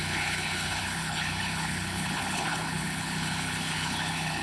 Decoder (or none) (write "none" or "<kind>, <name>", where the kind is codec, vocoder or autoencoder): codec, HILCodec